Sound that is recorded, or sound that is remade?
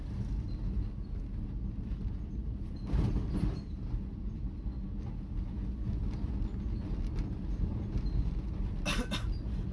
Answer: recorded